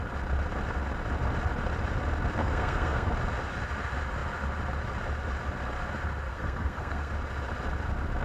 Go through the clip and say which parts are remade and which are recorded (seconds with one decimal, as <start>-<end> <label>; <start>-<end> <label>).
0.0-2.4 recorded; 2.4-3.1 remade; 3.1-6.3 recorded; 6.3-7.1 remade; 7.1-8.2 recorded